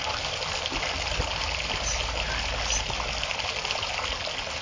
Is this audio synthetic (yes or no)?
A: no